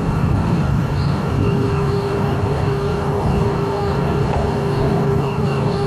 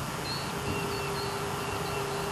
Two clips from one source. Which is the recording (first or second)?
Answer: second